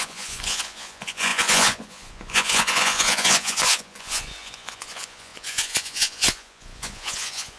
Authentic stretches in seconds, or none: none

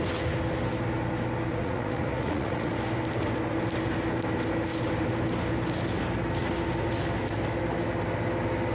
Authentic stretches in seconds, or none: 0.0-1.5; 2.7-8.7